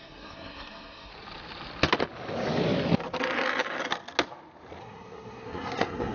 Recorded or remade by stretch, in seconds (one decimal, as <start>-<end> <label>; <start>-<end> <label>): 0.0-1.1 remade; 1.1-4.8 recorded; 4.8-6.1 remade